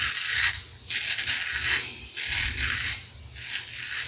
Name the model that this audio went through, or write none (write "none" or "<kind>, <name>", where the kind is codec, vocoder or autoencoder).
none